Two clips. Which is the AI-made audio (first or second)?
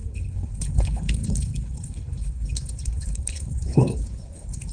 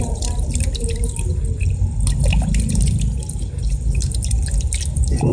first